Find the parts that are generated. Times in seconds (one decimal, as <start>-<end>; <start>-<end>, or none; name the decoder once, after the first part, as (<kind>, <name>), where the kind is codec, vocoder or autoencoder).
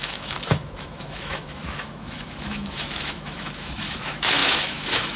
0.0-5.2 (autoencoder, DAC-VAE)